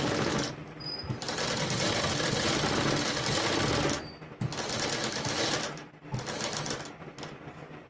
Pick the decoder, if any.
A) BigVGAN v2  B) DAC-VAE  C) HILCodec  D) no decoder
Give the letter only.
D